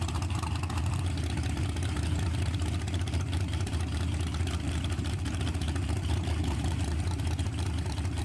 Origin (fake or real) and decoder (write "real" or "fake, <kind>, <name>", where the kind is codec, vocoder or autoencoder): fake, vocoder, BigVGAN v2